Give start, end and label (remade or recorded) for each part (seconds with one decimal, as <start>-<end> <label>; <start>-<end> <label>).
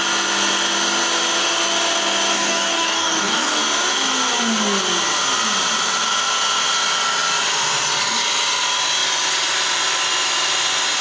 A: 0.0-2.3 recorded; 2.3-3.6 remade; 3.6-11.0 recorded